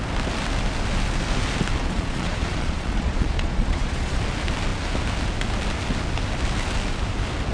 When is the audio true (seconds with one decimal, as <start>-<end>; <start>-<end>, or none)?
0.0-1.8; 4.2-7.5